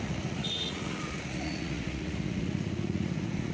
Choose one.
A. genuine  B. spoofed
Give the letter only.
B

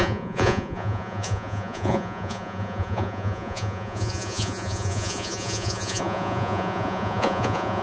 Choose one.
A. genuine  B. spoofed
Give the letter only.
B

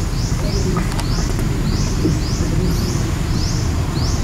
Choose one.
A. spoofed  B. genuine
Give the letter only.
B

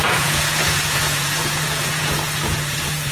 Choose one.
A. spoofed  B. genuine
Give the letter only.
A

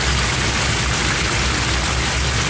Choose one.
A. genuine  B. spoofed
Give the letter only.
A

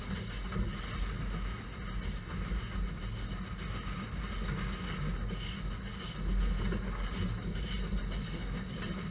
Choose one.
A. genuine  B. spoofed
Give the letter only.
A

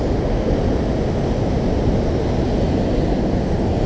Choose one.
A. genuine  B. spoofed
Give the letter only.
A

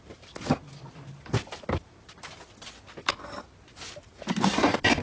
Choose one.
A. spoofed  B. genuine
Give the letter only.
B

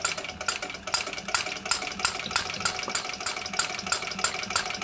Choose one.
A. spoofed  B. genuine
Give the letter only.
B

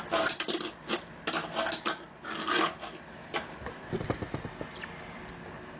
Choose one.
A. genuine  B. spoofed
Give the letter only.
A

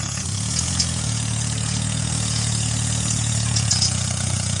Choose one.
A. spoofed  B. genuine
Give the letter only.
A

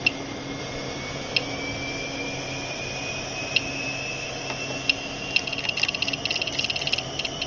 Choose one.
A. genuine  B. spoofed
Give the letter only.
A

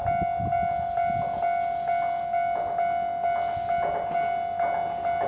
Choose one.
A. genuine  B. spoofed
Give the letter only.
A